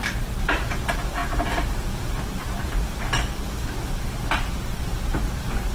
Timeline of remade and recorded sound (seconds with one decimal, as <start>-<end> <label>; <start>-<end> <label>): 0.0-5.7 remade